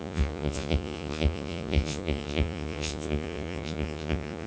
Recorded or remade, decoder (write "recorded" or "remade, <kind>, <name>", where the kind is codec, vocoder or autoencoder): remade, vocoder, Vocos